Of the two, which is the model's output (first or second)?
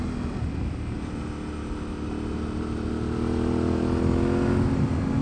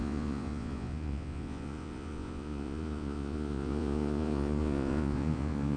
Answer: second